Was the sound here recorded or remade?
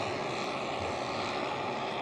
recorded